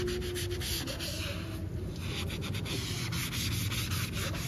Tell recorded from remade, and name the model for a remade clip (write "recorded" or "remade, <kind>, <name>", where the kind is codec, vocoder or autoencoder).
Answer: recorded